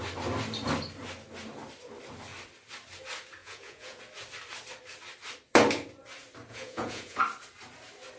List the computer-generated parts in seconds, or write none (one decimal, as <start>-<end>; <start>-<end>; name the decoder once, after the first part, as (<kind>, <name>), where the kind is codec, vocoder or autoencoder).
3.4-4.0 (vocoder, Vocos); 6.5-7.2